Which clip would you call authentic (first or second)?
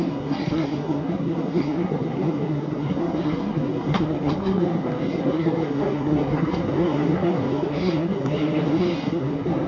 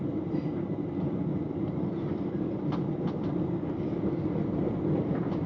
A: second